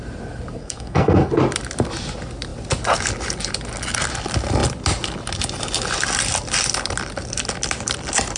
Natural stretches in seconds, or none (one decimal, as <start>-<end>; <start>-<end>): 0.0-0.6; 1.3-8.4

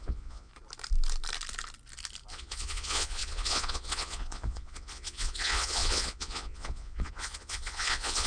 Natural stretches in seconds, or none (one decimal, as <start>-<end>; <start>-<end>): 0.5-2.3

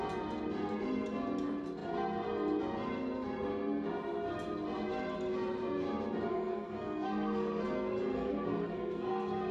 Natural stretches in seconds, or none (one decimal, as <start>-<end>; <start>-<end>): 0.0-6.3

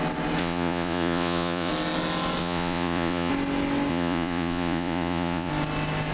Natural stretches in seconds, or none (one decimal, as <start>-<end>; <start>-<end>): 0.0-0.4; 1.7-2.4; 3.3-3.9; 5.5-6.1

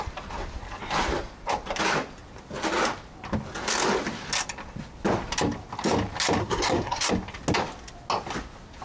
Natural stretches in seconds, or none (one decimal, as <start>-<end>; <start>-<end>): 0.0-6.4; 7.1-8.8

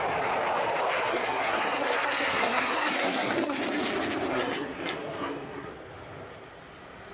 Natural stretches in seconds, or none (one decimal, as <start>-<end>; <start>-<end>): 0.0-1.1; 3.6-4.3; 5.7-7.1

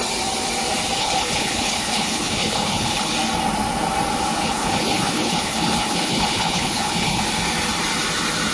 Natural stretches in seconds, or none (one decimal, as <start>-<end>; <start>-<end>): 0.0-1.0; 3.1-4.4; 7.2-8.5

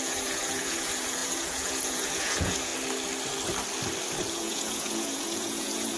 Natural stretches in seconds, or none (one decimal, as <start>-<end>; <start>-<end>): 2.7-4.3